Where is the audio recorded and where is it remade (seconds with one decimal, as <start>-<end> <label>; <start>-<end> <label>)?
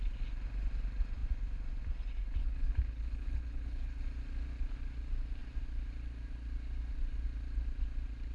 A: 0.0-2.4 recorded; 2.4-4.0 remade; 4.0-8.3 recorded